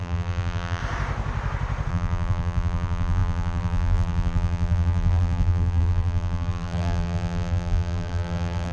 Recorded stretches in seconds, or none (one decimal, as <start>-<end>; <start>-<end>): 0.8-1.9